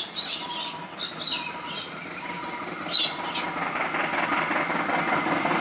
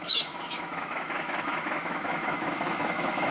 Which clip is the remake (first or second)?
second